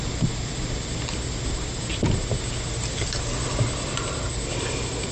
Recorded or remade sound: recorded